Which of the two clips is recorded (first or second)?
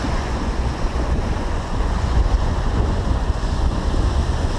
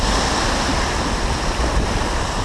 second